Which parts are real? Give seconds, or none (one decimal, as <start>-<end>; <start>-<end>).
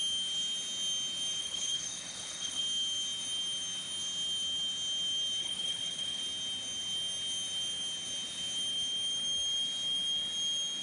0.0-1.4; 2.6-5.4; 6.2-10.8